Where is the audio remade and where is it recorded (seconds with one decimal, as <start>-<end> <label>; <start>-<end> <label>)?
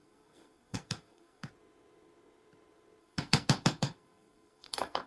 0.0-1.5 remade; 1.5-3.0 recorded; 3.0-5.1 remade